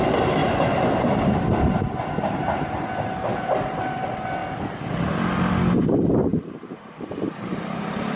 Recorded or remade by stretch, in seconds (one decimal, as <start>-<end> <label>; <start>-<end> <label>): 0.0-3.3 recorded; 3.3-4.0 remade; 4.0-4.4 recorded; 4.4-5.2 remade; 5.2-6.3 recorded; 6.3-8.2 remade